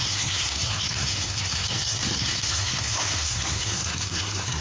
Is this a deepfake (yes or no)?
yes